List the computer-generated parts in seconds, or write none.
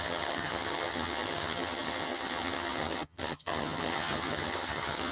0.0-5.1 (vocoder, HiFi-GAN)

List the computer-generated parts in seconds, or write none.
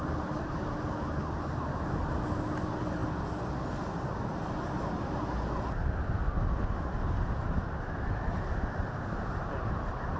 none